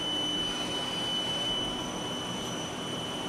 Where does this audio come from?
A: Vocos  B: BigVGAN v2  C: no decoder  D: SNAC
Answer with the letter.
C